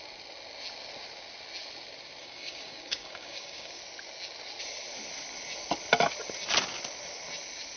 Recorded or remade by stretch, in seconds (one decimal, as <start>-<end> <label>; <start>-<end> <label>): 0.0-2.2 recorded; 2.2-3.8 remade; 3.8-7.8 recorded